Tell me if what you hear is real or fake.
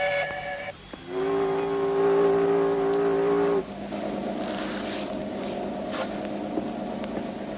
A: real